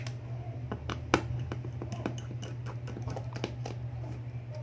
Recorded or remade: recorded